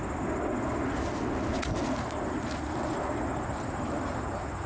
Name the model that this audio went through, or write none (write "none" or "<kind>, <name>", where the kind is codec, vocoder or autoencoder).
none